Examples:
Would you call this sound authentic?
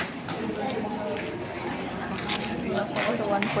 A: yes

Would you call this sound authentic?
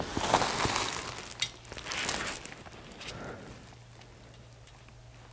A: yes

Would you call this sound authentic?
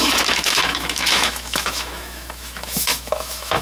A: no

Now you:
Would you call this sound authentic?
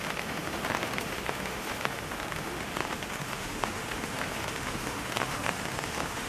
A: no